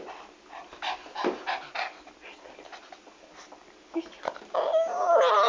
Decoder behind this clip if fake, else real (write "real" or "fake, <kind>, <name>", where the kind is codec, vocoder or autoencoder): real